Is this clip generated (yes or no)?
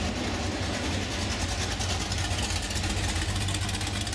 no